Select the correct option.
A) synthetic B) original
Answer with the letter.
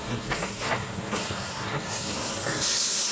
A